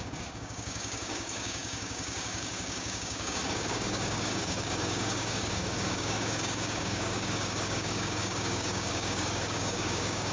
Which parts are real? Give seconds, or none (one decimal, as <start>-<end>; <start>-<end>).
none